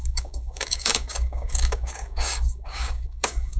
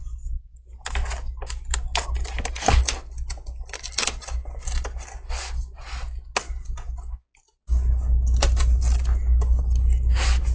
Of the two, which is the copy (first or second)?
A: first